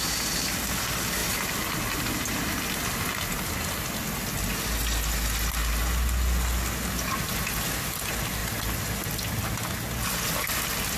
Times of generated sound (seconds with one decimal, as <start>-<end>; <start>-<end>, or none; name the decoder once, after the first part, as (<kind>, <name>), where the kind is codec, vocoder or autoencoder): none